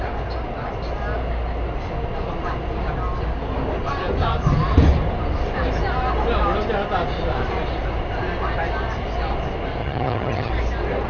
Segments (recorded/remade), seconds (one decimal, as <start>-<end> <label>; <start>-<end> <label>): 0.0-9.8 recorded; 9.8-10.5 remade; 10.5-11.1 recorded